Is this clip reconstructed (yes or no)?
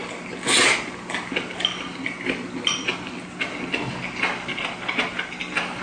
no